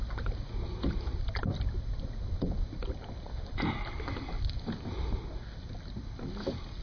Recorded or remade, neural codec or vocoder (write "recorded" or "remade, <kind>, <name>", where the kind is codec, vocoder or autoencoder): recorded